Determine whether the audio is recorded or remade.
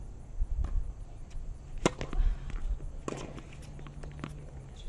recorded